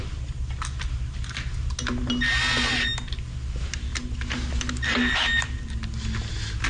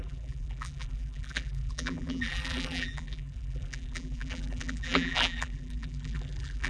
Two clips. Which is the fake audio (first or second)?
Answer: second